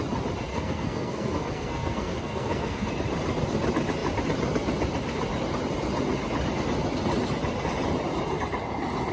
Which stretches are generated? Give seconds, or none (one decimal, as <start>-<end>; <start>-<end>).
0.5-2.9